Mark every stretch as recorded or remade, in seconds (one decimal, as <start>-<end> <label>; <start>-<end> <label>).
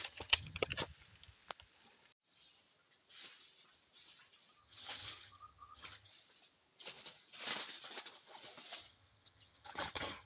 0.0-0.7 remade; 0.7-4.6 recorded; 4.6-6.1 remade; 6.1-8.8 recorded; 8.8-10.3 remade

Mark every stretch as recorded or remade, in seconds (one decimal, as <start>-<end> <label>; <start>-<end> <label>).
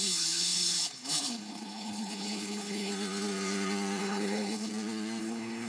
0.0-2.9 remade; 2.9-4.0 recorded; 4.0-4.7 remade; 4.7-5.2 recorded; 5.2-5.7 remade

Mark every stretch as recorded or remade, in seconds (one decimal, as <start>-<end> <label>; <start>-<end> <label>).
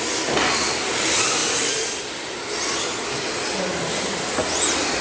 0.0-5.0 recorded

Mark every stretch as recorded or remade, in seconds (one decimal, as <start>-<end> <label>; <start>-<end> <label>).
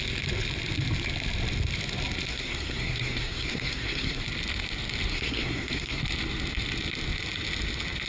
0.0-2.3 recorded; 2.3-4.2 remade; 4.2-5.1 recorded; 5.1-6.0 remade; 6.0-8.1 recorded